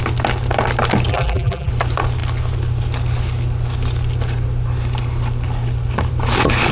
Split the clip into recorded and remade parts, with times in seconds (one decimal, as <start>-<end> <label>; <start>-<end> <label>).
0.0-1.1 recorded; 1.1-1.7 remade; 1.7-6.7 recorded